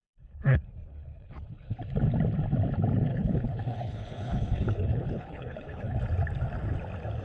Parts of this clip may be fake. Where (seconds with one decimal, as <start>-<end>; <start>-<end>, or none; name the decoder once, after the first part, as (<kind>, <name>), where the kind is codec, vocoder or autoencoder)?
0.0-1.8 (codec, HILCodec); 3.1-6.0